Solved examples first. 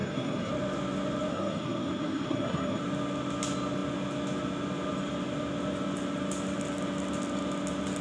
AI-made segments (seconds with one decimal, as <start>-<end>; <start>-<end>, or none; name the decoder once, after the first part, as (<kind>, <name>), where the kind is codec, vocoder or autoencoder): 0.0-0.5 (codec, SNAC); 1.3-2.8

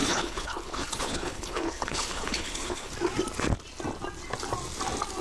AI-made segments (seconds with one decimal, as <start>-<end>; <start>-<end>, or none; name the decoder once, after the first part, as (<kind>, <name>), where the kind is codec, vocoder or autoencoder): 0.0-2.9 (codec, HILCodec)

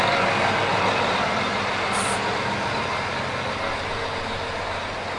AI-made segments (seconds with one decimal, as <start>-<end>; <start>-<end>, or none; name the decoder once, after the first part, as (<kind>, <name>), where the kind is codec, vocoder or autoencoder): none

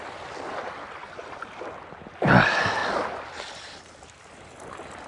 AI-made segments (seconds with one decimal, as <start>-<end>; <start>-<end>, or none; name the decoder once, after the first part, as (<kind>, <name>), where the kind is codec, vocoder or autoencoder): none

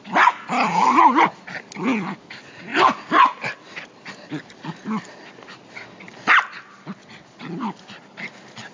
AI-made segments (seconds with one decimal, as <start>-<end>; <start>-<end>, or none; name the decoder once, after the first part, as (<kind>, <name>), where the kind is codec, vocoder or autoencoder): none

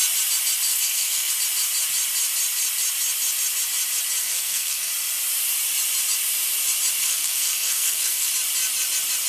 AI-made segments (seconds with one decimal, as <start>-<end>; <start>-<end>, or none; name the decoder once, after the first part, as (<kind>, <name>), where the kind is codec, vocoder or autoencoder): 0.7-1.3 (codec, SNAC); 4.2-4.9; 7.0-8.3

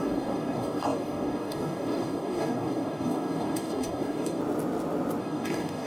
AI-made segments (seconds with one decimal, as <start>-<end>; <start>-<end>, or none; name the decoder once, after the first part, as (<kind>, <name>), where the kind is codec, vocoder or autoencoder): 0.0-4.4 (codec, DAC); 5.2-5.9

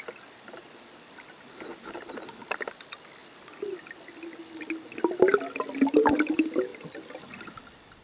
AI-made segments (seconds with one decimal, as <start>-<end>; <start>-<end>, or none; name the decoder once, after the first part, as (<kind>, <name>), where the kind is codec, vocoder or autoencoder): none